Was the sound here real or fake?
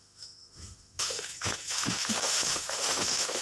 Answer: fake